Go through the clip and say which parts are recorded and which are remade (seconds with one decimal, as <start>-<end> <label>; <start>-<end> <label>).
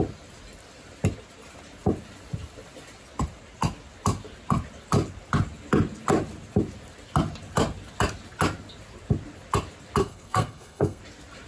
0.0-10.0 recorded; 10.0-11.0 remade; 11.0-11.5 recorded